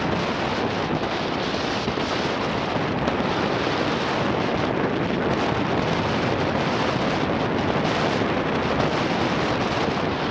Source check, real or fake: real